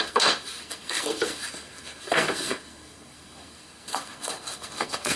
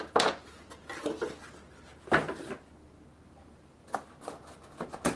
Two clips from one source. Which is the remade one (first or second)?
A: first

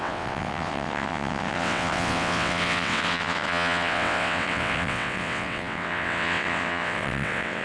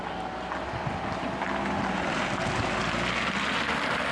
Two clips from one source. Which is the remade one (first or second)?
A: first